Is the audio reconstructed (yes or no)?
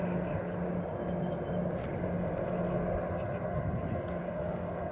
no